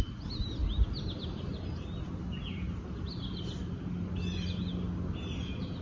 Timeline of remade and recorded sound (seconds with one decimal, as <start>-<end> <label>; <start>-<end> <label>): 0.0-5.8 recorded